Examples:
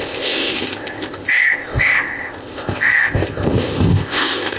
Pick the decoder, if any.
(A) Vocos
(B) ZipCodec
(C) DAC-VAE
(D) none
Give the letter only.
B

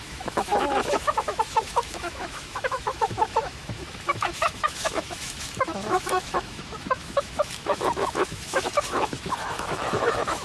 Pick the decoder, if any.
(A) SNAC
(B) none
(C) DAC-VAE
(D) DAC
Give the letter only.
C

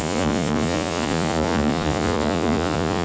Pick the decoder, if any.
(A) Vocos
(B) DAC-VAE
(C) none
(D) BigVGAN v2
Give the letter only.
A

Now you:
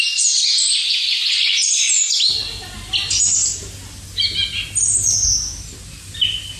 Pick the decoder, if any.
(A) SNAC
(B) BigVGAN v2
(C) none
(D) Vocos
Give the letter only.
C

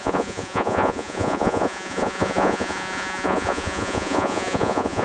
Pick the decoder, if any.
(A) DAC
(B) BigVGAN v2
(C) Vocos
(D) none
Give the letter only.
C